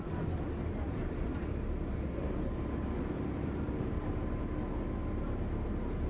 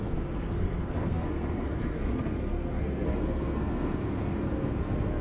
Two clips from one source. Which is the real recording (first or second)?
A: first